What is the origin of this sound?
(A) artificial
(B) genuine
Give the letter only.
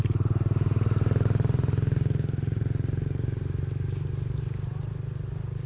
B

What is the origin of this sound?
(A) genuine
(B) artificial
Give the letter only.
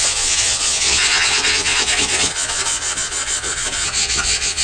B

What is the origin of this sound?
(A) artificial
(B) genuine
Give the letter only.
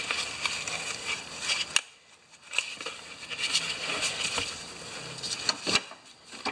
B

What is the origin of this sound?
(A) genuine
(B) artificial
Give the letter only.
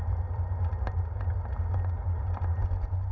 A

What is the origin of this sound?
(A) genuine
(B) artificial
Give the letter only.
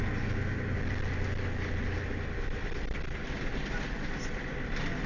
A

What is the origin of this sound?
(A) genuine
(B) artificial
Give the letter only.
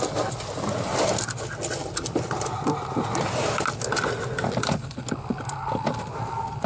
A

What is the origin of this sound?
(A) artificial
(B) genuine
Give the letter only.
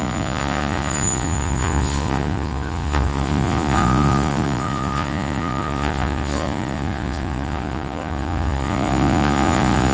A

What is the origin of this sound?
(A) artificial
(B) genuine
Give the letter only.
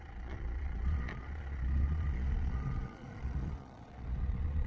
A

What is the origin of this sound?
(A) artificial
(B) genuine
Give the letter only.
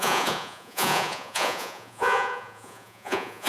A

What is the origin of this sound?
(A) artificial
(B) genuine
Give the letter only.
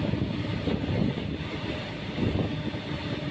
B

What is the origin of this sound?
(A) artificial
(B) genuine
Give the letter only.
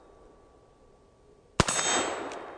B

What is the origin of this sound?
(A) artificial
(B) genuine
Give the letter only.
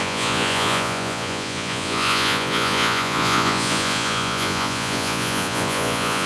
A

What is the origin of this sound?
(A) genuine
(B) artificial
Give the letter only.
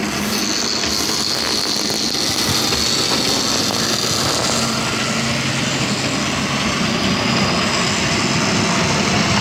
A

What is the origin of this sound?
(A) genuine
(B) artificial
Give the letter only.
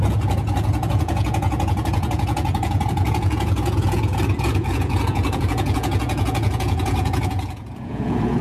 B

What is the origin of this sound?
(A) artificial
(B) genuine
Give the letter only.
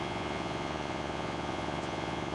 A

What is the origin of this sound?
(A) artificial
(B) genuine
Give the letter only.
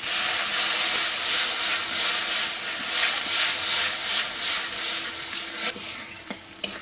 B